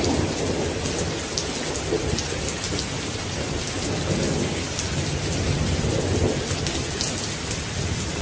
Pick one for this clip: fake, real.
real